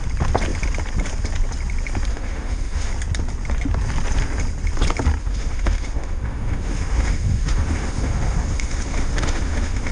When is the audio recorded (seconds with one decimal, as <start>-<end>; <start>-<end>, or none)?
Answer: 0.0-2.1; 2.9-5.2